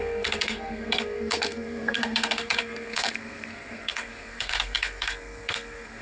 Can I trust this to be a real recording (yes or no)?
no